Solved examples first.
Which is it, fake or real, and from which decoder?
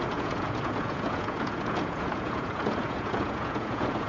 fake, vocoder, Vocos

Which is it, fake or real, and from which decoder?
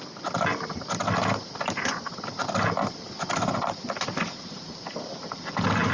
real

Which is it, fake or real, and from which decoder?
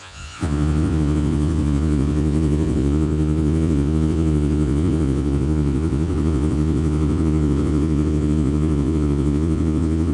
fake, vocoder, Vocos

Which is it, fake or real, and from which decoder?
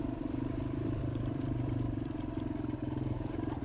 fake, vocoder, BigVGAN v2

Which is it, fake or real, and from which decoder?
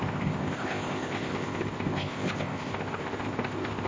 fake, codec, ZipCodec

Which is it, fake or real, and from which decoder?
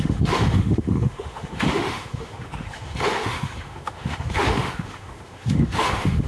fake, autoencoder, DAC-VAE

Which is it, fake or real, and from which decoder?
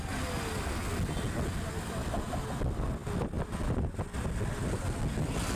real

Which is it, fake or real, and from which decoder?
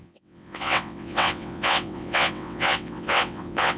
fake, vocoder, WaveNeXt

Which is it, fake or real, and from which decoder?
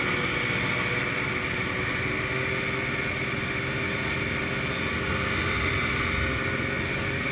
real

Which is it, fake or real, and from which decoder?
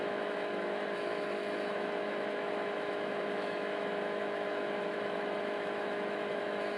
fake, autoencoder, DAC-VAE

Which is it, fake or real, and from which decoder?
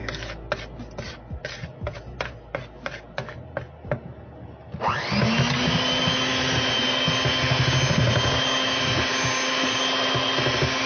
real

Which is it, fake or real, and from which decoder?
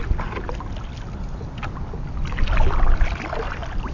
real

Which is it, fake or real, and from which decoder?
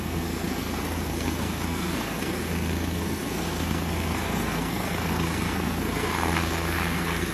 fake, codec, SNAC